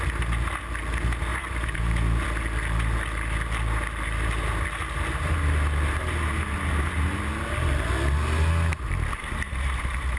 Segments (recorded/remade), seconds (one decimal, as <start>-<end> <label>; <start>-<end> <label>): 0.0-1.3 recorded; 1.3-1.8 remade; 1.8-8.7 recorded; 8.7-10.2 remade